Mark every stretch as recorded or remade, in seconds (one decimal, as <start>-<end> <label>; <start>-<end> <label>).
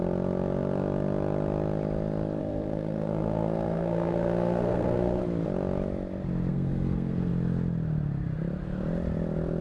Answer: 0.0-2.4 recorded; 2.4-5.2 remade; 5.2-6.5 recorded; 6.5-7.3 remade; 7.3-9.6 recorded